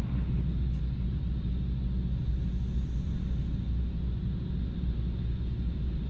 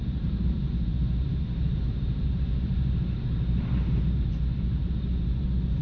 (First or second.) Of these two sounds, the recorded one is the first